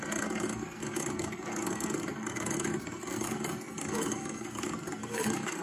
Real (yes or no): no